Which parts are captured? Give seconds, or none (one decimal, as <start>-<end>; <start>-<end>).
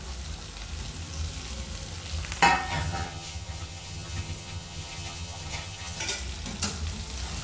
0.0-2.7; 6.0-7.4